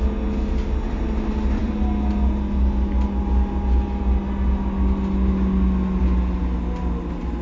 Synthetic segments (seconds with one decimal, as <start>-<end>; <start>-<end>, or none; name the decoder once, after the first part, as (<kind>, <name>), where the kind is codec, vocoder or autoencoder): none